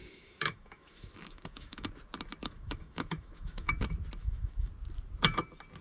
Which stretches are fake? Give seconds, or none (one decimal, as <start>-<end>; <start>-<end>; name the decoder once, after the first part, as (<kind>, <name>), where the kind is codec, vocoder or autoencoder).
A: 0.0-1.9 (autoencoder, DAC-VAE); 2.4-3.7; 4.2-4.7